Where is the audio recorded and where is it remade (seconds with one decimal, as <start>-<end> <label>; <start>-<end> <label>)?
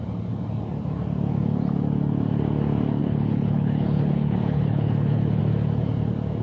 0.0-3.0 recorded; 3.0-5.4 remade; 5.4-6.4 recorded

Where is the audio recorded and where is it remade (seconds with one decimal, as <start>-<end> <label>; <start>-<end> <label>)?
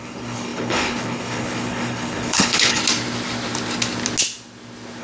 0.0-2.8 remade; 2.8-5.0 recorded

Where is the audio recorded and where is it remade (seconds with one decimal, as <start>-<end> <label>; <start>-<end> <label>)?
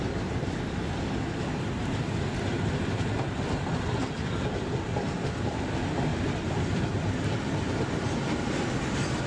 0.0-9.3 recorded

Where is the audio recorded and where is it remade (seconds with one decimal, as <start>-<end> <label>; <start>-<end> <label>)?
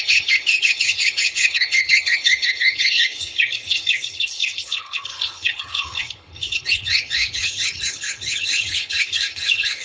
0.0-9.8 remade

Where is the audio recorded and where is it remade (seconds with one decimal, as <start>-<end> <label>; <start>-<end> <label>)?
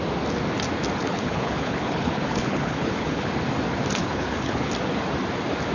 0.0-1.0 recorded; 1.0-3.3 remade; 3.3-4.0 recorded; 4.0-4.7 remade; 4.7-5.7 recorded